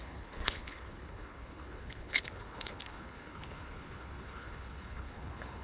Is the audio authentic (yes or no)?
no